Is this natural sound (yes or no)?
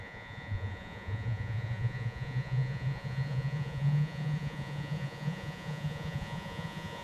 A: no